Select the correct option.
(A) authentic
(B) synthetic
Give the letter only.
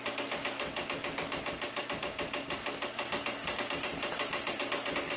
A